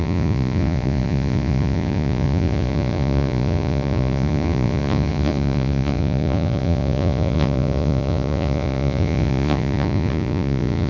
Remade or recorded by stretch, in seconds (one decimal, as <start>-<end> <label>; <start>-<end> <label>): 0.0-10.9 remade